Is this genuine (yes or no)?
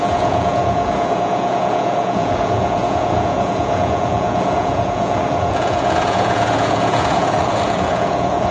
no